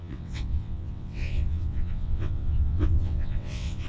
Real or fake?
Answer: fake